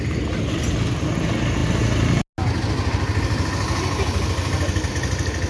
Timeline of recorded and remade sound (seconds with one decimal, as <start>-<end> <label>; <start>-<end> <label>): 0.0-5.5 recorded